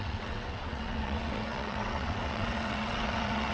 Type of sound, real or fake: fake